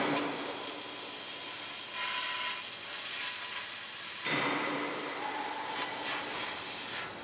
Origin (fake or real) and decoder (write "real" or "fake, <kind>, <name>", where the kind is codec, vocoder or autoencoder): real